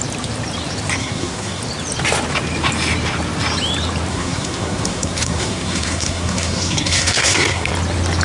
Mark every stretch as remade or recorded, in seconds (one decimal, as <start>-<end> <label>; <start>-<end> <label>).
0.0-1.0 recorded; 1.0-1.6 remade; 1.6-4.1 recorded; 4.1-7.7 remade; 7.7-8.2 recorded